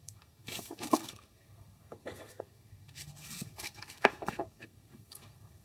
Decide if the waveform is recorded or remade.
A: remade